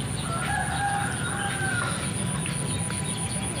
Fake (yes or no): no